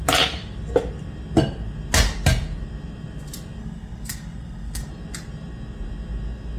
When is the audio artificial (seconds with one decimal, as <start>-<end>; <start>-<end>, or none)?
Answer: 3.6-4.9